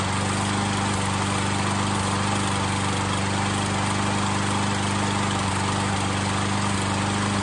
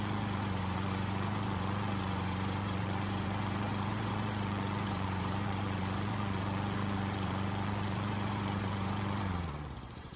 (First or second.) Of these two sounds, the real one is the first